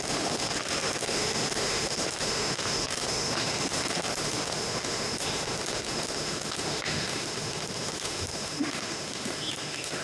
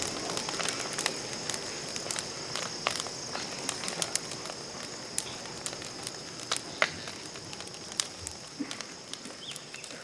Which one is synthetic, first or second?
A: first